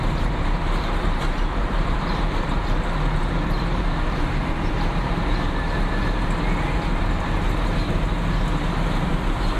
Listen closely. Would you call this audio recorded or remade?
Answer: remade